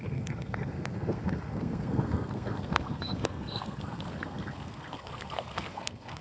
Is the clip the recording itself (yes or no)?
no